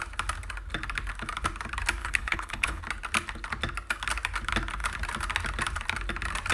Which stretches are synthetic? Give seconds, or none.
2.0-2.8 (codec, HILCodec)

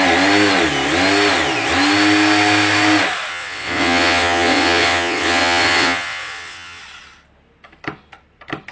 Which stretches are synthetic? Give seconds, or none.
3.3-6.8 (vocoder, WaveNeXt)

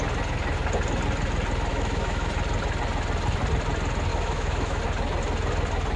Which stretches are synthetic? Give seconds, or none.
1.7-2.3 (autoencoder, DAC-VAE); 4.1-4.8

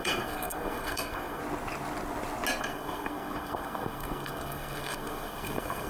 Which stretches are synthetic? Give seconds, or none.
0.0-1.4 (codec, SNAC); 2.6-5.9

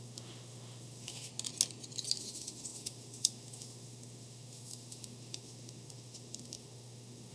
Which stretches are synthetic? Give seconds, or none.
0.0-1.3 (autoencoder, DAC-VAE); 2.2-7.3

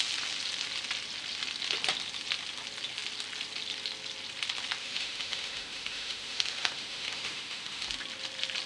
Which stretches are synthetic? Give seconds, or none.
4.8-7.9 (autoencoder, DAC-VAE)

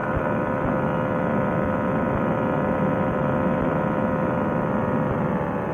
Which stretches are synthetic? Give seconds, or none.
none

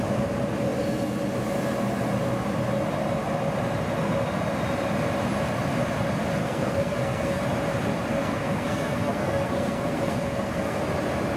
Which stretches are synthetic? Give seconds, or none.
6.4-7.4 (codec, SNAC); 8.1-10.8